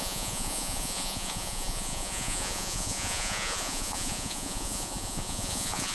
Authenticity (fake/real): fake